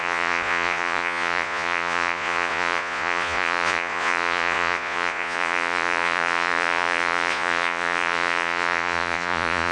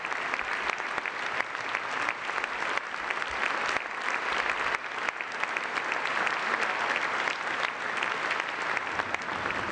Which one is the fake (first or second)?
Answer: first